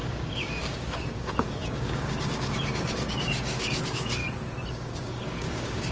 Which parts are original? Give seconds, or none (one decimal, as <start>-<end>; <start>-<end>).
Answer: 4.2-4.7